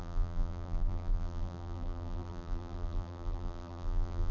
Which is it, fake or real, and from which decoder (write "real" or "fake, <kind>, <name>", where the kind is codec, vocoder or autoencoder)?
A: fake, vocoder, BigVGAN v2